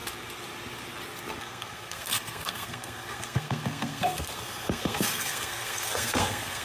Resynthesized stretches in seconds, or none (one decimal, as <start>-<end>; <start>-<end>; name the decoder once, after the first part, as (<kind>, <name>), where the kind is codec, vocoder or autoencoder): 1.4-6.6 (codec, SNAC)

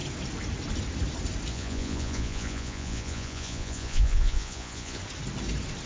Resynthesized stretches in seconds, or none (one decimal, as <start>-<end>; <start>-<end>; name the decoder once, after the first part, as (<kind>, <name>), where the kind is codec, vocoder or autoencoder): 1.5-5.0 (vocoder, Vocos)

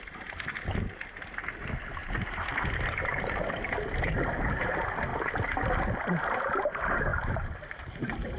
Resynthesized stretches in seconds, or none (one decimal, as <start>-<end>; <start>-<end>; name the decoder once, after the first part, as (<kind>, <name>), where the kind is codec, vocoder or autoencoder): 7.1-8.4 (vocoder, BigVGAN v2)

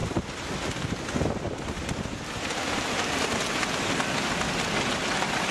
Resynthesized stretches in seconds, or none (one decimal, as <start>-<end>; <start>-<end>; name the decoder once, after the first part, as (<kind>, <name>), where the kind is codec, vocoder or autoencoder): none

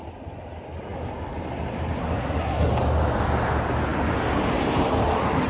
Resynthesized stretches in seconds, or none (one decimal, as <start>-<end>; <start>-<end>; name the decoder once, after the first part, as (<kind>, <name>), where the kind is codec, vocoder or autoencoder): 2.0-2.7 (codec, SNAC)

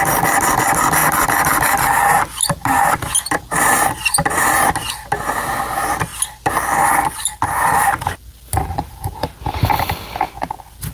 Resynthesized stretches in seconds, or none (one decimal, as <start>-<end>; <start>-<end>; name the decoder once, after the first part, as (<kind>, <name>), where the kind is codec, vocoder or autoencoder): none